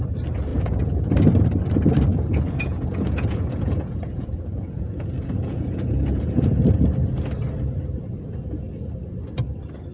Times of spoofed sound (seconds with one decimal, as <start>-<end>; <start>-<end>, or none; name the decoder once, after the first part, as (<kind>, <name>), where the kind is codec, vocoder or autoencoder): 0.5-1.1 (vocoder, Vocos); 2.1-6.6